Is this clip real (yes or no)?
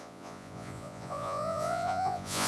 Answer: no